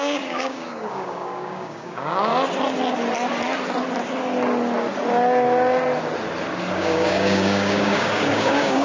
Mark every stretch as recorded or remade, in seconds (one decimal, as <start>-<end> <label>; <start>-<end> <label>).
0.0-2.3 remade; 2.3-6.7 recorded; 6.7-8.8 remade